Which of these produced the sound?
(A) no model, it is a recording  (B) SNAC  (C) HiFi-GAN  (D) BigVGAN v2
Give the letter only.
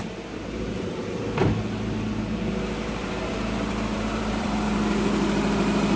D